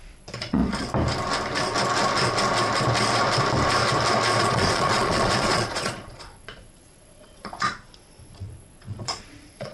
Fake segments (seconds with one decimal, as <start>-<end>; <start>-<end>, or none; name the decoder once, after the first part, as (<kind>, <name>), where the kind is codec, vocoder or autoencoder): 0.0-0.6 (vocoder, Vocos); 4.4-9.7